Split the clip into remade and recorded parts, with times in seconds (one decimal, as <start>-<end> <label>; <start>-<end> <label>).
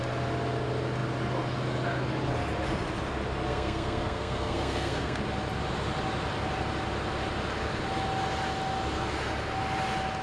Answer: 0.0-3.5 recorded; 3.5-5.2 remade; 5.2-10.2 recorded